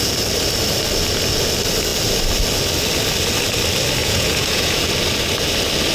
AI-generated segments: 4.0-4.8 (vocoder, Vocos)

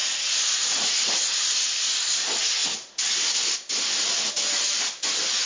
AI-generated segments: 0.0-1.9 (vocoder, Vocos)